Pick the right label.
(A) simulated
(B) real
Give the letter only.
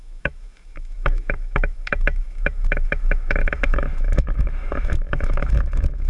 A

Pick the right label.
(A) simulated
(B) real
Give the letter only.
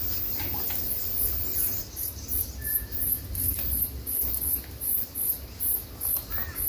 B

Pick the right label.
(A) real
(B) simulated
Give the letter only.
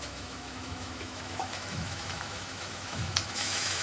B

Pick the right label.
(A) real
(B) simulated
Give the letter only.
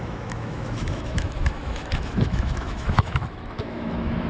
B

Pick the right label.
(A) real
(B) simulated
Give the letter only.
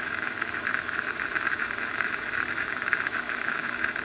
B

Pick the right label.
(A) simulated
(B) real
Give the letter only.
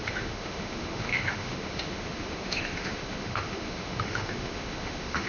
A